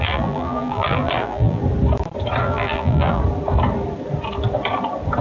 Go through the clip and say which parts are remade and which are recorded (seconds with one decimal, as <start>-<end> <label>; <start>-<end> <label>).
0.0-1.6 remade; 1.6-2.4 recorded; 2.4-3.2 remade; 3.2-5.2 recorded